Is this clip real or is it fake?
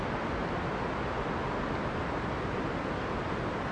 real